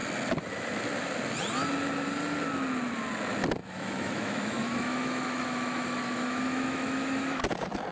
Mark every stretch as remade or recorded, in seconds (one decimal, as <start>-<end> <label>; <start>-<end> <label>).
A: 0.0-3.6 recorded; 3.6-7.4 remade; 7.4-7.9 recorded